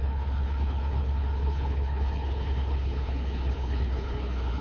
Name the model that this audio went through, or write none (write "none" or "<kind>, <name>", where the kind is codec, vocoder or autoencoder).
codec, HILCodec